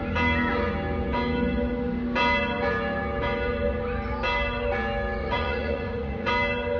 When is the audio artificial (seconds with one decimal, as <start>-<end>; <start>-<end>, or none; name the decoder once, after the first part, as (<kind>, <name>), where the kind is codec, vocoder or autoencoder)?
5.2-6.3 (vocoder, Vocos)